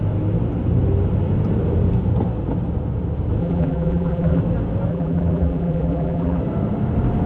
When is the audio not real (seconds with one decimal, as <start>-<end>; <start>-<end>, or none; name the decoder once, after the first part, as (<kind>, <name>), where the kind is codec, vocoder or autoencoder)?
3.4-4.4 (vocoder, BigVGAN v2); 4.9-6.4